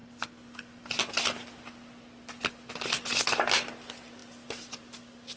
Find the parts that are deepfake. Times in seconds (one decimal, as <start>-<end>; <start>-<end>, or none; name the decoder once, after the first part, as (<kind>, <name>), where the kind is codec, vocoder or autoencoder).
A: none